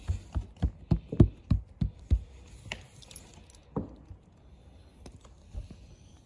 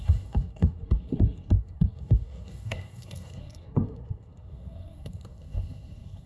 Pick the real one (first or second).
first